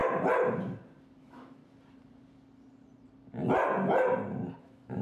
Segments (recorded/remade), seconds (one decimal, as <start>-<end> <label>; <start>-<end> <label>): 0.0-1.2 recorded; 1.2-1.6 remade; 1.6-4.6 recorded; 4.6-5.0 remade